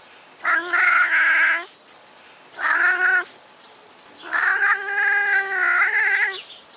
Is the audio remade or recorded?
recorded